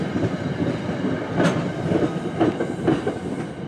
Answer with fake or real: real